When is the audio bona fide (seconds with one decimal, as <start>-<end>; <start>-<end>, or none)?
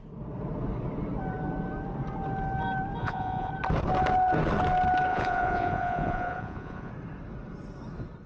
0.0-3.0; 3.5-5.1; 6.9-8.3